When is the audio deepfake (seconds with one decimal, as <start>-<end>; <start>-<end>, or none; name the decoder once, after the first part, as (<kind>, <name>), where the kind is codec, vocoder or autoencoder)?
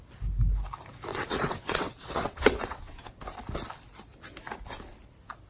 1.1-3.1 (vocoder, WaveNeXt)